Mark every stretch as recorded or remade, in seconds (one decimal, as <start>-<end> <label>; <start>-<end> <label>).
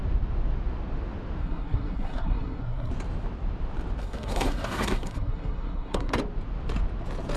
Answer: 0.0-1.4 recorded; 1.4-2.9 remade; 2.9-4.0 recorded; 4.0-6.2 remade; 6.2-7.4 recorded